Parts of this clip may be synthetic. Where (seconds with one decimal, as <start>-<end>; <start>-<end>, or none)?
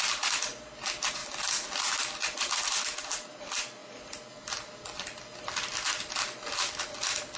none